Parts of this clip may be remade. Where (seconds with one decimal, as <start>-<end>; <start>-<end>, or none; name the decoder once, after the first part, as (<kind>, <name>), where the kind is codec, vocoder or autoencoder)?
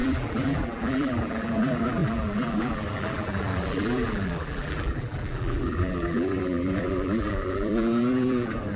0.0-8.8 (vocoder, BigVGAN v2)